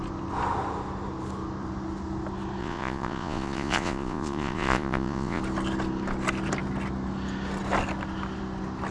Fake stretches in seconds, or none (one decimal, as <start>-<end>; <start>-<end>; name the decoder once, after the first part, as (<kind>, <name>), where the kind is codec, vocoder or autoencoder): 2.6-5.4 (vocoder, Vocos)